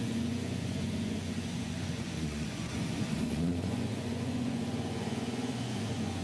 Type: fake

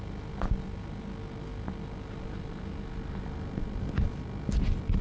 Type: real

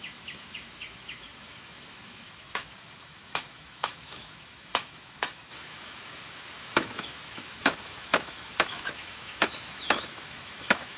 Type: fake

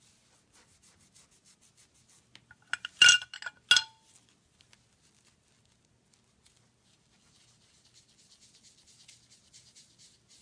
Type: real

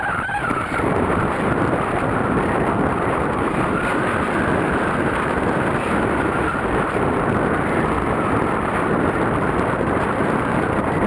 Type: fake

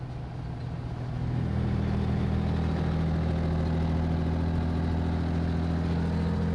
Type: real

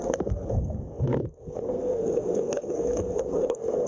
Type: fake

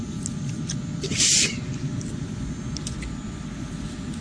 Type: real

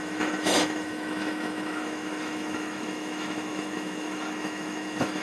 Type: fake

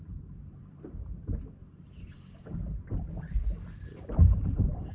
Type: fake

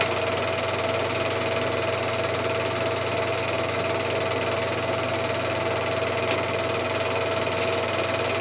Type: real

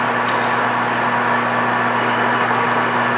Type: real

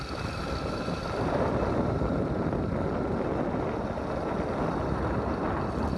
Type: real